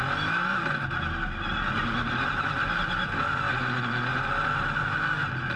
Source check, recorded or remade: recorded